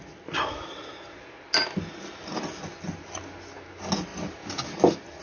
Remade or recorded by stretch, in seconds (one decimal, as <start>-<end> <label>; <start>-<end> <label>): 0.0-5.2 recorded